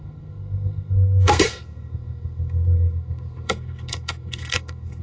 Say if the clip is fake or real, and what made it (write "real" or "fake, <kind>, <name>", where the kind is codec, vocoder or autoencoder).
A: fake, codec, SNAC